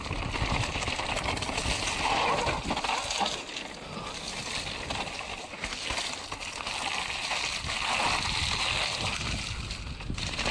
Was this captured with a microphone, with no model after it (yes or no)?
yes